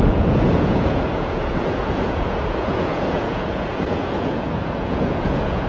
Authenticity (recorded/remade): remade